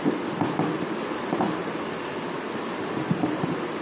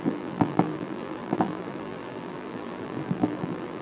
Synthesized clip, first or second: second